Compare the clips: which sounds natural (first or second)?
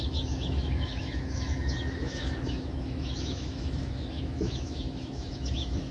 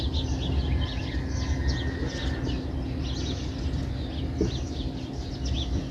second